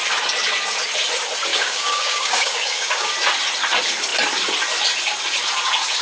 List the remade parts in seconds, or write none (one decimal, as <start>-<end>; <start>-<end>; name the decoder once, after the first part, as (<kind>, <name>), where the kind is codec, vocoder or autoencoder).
1.5-3.1 (codec, DAC)